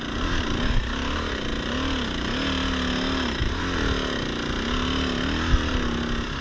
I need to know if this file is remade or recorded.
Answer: recorded